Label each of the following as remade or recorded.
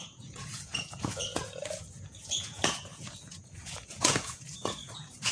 remade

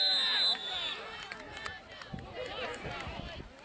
recorded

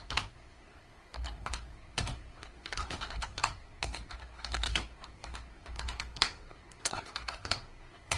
remade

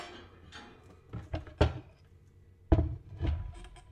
recorded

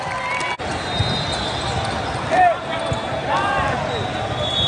recorded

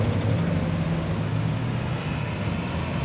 recorded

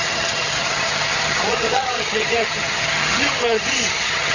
remade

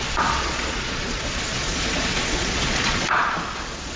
remade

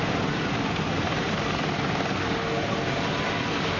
recorded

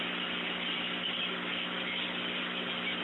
recorded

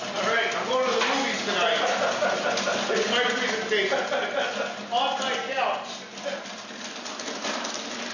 recorded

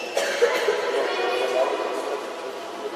recorded